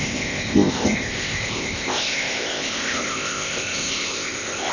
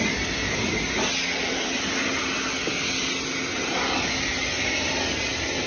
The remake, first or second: first